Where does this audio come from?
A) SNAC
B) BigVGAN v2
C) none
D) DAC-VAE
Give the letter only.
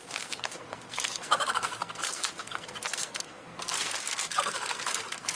A